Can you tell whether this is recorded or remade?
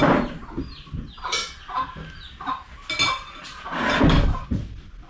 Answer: recorded